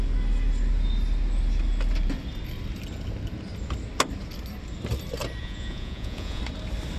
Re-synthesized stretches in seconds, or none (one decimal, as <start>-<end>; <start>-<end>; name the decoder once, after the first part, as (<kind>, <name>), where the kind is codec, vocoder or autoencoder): 5.4-6.4 (vocoder, Vocos)